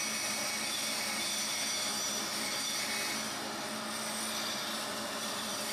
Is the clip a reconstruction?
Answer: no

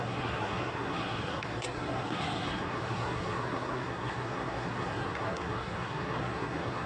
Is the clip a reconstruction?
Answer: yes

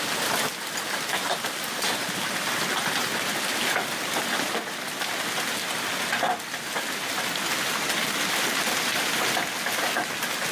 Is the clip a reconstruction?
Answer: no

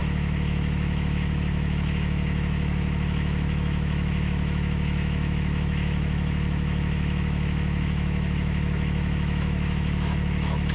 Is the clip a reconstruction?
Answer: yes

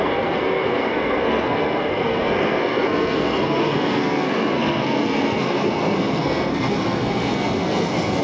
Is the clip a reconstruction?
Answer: yes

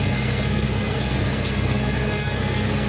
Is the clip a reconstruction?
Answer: yes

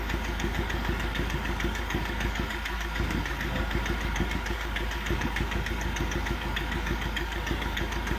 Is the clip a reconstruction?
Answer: yes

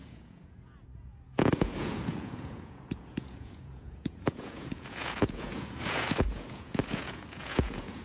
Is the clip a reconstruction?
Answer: yes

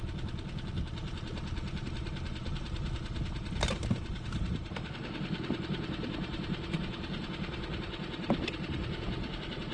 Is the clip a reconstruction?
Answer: no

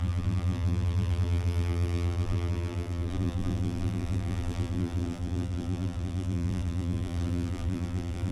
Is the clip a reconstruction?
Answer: yes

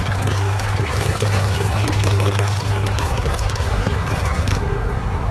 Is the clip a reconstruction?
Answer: yes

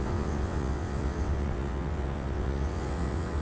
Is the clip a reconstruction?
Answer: yes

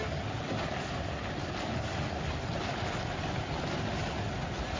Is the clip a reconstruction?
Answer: no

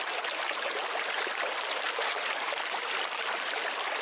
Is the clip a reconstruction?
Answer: no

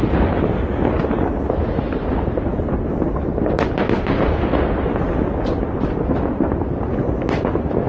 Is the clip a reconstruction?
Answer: no